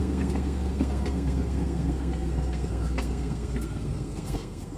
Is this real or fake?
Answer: fake